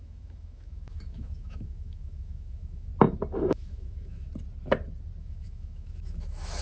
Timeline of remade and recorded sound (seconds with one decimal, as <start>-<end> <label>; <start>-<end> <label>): 0.0-2.9 remade; 2.9-3.5 recorded; 3.5-4.3 remade; 4.3-5.2 recorded; 5.2-6.6 remade